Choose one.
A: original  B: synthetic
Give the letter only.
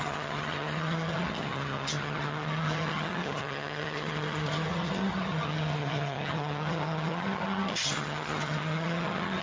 B